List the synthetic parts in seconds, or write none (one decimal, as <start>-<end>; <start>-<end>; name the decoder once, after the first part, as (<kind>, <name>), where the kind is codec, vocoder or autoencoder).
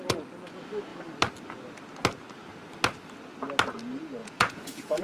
4.2-5.0 (vocoder, Vocos)